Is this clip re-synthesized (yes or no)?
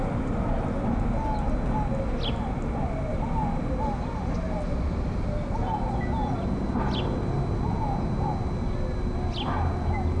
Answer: no